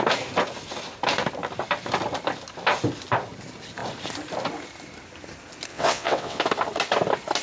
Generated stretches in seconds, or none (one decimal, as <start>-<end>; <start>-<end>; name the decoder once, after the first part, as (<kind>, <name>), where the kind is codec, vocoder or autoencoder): 5.7-6.4 (vocoder, WaveNeXt)